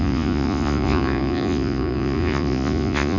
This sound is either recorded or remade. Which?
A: remade